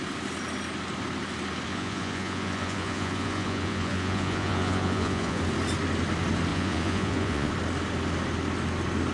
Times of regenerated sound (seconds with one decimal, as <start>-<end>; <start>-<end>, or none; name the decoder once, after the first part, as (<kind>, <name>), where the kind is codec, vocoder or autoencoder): 1.7-5.4 (vocoder, Vocos); 6.5-7.5